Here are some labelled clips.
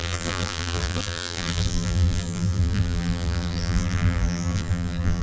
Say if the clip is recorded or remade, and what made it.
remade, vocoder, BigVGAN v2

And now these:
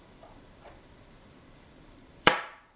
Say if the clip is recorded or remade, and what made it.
remade, vocoder, BigVGAN v2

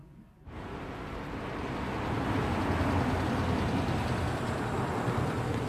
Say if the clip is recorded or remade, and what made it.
recorded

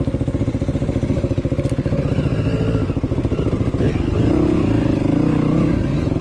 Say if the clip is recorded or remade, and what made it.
recorded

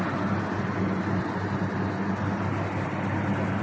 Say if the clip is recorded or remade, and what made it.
recorded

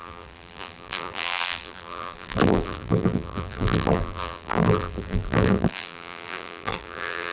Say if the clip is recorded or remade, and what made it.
remade, vocoder, BigVGAN v2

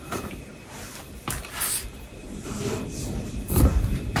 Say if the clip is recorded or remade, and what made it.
remade, vocoder, BigVGAN v2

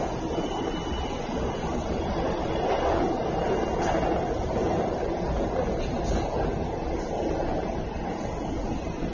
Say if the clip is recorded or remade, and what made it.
recorded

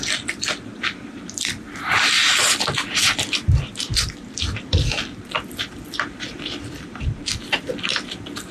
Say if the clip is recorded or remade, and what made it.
remade, vocoder, BigVGAN v2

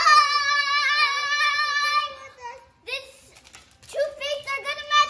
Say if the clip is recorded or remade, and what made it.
recorded